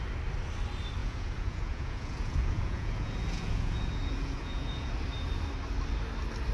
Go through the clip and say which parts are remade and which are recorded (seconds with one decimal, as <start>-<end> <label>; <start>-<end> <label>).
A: 0.0-1.0 recorded; 1.0-4.9 remade; 4.9-6.5 recorded

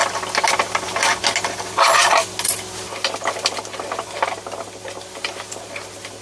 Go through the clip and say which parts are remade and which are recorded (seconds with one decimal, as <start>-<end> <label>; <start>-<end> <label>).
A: 0.0-6.2 recorded